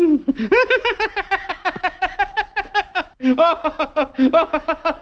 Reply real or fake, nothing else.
fake